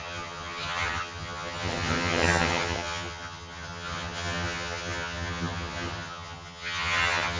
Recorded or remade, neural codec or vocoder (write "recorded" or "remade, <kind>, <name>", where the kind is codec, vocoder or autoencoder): remade, vocoder, HiFi-GAN